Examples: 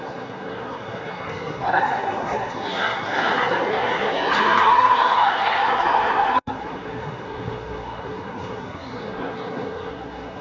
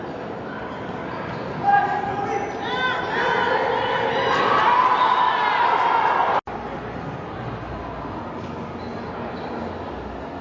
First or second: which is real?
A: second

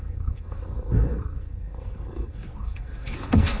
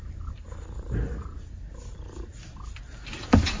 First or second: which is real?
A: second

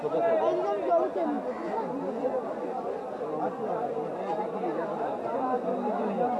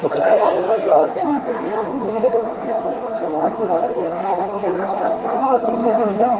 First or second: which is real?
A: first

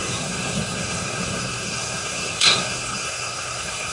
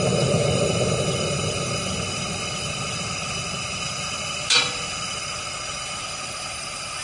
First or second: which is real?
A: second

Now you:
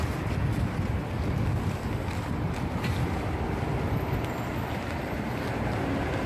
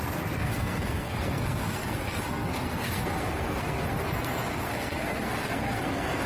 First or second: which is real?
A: first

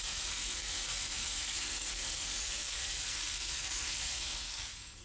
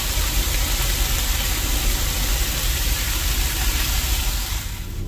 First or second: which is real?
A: second